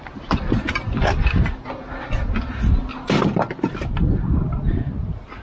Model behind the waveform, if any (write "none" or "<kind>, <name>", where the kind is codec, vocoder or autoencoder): none